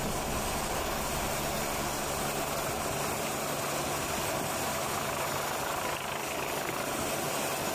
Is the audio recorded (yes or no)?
yes